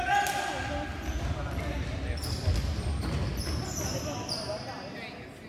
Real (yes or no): yes